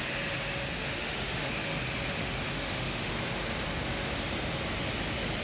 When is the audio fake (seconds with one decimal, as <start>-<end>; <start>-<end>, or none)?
0.8-1.5; 2.2-3.1